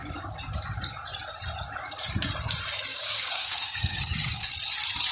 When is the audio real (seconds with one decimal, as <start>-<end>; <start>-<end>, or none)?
0.0-2.9; 4.5-5.1